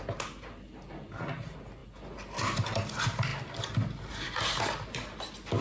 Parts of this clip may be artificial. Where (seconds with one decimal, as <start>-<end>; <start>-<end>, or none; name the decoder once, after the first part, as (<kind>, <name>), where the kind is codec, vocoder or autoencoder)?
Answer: none